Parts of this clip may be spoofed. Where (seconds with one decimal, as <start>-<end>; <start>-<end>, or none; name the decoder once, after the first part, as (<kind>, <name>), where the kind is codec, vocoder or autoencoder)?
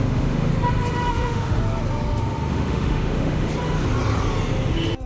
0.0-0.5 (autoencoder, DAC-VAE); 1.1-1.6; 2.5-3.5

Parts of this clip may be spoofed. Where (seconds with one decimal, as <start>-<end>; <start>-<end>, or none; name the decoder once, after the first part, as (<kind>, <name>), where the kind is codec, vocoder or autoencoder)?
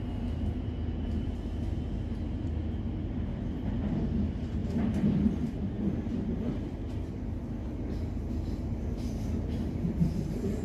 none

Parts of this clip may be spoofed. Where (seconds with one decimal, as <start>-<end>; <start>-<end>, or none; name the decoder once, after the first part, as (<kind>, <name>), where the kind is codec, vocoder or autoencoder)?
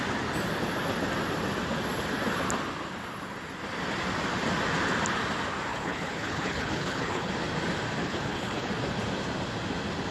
5.7-7.3 (codec, HILCodec); 8.0-8.7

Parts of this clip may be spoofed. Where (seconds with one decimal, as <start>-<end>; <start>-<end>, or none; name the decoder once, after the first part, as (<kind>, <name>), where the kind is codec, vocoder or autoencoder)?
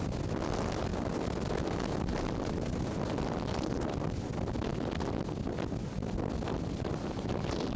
none